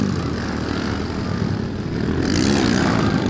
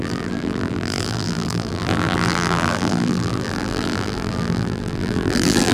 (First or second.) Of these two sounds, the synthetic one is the second